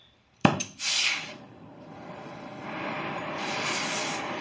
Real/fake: fake